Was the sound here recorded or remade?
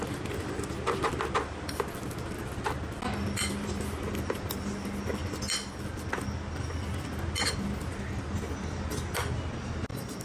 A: recorded